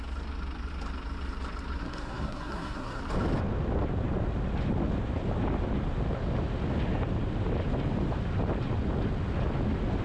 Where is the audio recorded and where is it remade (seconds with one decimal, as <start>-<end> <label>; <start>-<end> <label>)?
0.0-1.8 recorded; 1.8-3.0 remade; 3.0-10.0 recorded